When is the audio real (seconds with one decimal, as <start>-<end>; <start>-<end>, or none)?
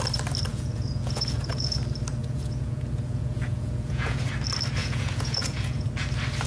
0.0-0.5; 1.8-2.2; 4.3-4.8; 5.9-6.5